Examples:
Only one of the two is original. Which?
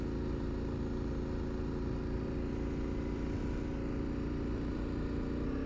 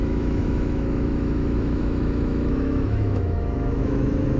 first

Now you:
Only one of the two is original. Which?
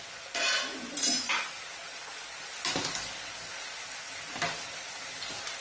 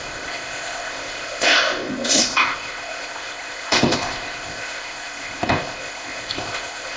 first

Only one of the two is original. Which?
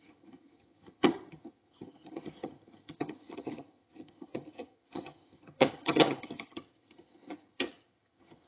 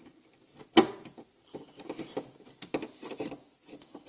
second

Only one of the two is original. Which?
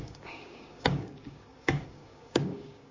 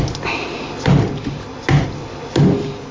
second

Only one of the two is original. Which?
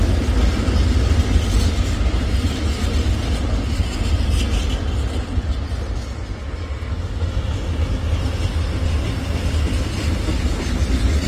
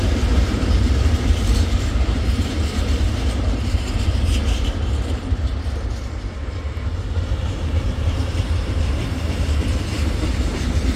first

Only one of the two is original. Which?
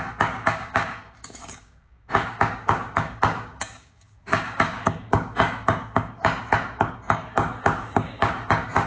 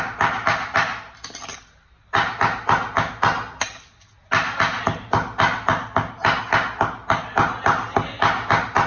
second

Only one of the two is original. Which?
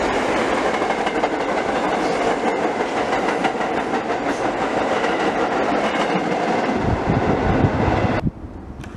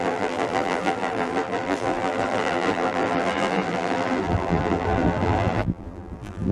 first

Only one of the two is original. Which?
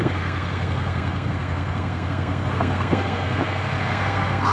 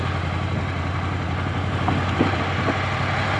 second